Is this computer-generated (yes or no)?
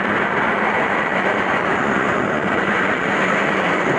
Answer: yes